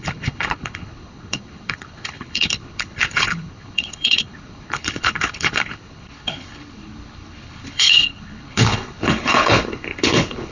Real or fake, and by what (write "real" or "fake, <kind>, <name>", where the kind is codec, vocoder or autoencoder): fake, codec, HILCodec